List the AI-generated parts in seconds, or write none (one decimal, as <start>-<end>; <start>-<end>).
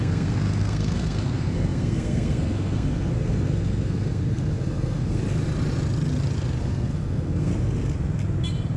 0.0-5.2; 6.6-7.5